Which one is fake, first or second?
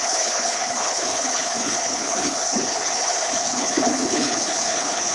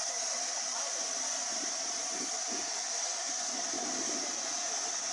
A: first